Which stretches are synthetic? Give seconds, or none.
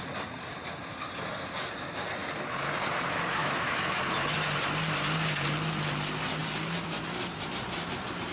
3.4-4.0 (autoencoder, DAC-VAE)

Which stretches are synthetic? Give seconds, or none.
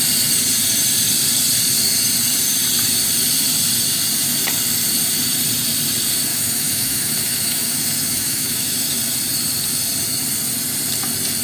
6.3-9.0 (autoencoder, DAC-VAE)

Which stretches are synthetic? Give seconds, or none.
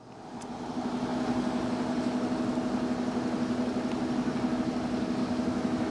5.2-5.9 (autoencoder, DAC-VAE)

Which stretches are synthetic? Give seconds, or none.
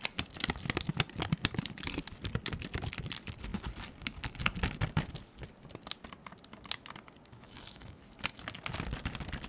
7.3-8.0 (autoencoder, DAC-VAE)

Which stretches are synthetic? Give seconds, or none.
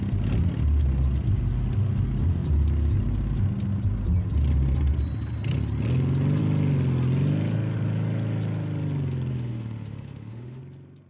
9.3-10.6 (autoencoder, DAC-VAE)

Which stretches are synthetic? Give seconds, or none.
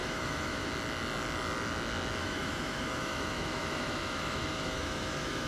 0.0-0.7 (autoencoder, DAC-VAE); 2.2-5.5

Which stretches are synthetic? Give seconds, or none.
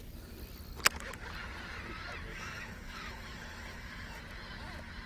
2.3-4.2 (autoencoder, DAC-VAE)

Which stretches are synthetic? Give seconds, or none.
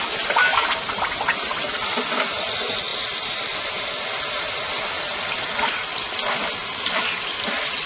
none